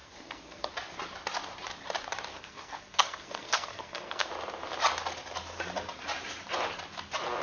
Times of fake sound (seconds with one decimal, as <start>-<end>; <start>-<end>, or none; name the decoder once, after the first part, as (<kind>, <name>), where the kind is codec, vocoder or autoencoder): 0.0-0.7 (codec, SNAC); 2.3-4.3